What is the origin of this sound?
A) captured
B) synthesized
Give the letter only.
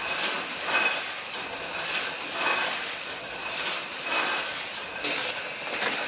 A